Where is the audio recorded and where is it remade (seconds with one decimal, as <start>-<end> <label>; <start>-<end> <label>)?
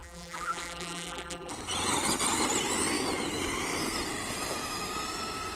0.0-1.5 remade; 1.5-5.5 recorded